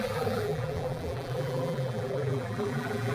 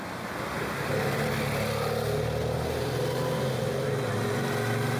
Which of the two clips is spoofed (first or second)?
first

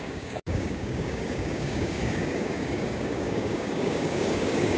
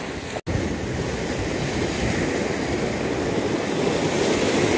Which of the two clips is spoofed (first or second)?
first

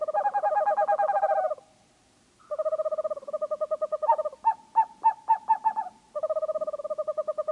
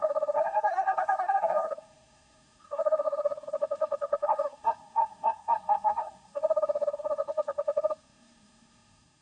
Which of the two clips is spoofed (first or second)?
second